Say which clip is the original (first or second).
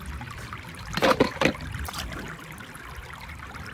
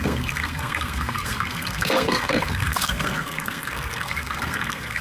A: first